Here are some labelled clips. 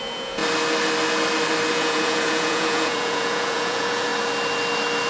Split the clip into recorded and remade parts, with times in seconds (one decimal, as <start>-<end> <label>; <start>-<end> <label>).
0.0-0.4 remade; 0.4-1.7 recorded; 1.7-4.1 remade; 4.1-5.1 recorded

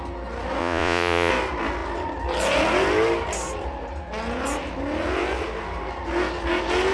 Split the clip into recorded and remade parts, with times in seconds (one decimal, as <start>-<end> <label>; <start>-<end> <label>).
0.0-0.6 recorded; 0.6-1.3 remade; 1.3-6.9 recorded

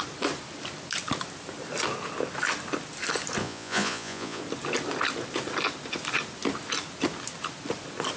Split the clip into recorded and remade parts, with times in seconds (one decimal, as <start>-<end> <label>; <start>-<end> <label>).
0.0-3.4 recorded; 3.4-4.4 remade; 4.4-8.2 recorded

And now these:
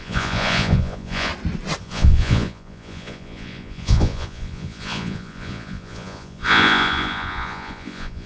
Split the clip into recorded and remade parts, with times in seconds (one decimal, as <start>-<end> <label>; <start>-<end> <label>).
0.0-1.3 remade; 1.3-1.8 recorded; 1.8-8.3 remade